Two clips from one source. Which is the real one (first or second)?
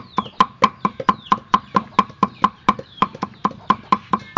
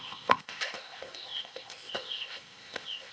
first